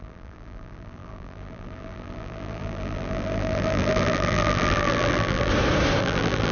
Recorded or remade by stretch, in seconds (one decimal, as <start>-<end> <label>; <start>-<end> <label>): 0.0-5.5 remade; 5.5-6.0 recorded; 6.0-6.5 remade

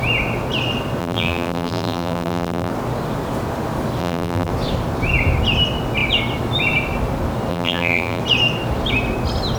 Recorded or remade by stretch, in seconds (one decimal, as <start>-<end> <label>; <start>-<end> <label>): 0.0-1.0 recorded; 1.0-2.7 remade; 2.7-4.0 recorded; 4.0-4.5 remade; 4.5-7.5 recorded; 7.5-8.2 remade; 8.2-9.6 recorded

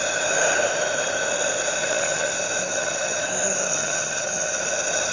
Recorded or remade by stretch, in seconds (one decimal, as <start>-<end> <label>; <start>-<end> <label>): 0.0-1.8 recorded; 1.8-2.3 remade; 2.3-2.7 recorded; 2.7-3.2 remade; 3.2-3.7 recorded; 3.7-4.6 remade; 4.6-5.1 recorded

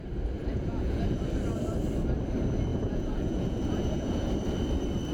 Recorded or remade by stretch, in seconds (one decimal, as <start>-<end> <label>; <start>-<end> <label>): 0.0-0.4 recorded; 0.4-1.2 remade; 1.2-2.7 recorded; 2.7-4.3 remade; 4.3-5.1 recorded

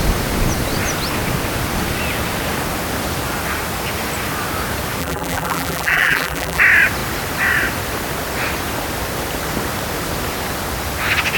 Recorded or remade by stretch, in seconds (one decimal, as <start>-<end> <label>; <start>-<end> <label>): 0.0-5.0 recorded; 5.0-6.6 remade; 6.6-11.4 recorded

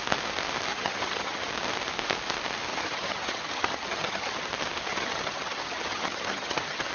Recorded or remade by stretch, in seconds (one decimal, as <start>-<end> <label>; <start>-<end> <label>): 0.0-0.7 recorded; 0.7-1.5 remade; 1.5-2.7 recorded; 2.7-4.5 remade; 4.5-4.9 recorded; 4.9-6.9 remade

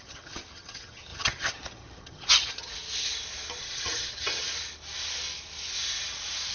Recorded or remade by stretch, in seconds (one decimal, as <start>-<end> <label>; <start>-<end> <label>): 0.0-2.7 remade; 2.7-3.6 recorded; 3.6-4.5 remade; 4.5-6.5 recorded